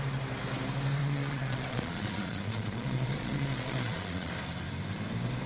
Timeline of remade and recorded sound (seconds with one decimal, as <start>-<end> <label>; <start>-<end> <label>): 0.0-1.0 recorded; 1.0-4.3 remade; 4.3-5.5 recorded